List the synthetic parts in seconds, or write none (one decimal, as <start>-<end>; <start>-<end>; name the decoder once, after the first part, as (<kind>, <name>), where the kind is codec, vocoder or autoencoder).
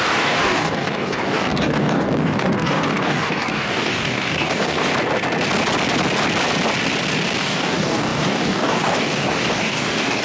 0.0-4.9 (codec, DAC); 7.4-10.2